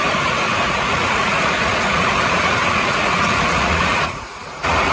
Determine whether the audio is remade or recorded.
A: remade